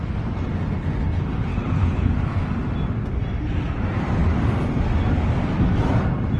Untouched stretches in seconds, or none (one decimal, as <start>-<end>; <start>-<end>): 0.0-1.5; 2.1-6.4